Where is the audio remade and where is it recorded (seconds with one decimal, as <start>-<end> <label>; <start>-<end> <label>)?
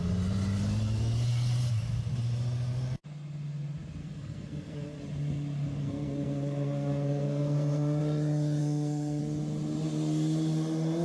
0.0-4.0 recorded; 4.0-5.0 remade; 5.0-5.8 recorded; 5.8-8.0 remade; 8.0-8.6 recorded; 8.6-9.2 remade; 9.2-11.0 recorded